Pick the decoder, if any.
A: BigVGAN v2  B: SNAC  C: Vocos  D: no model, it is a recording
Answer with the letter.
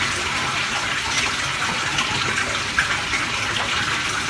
D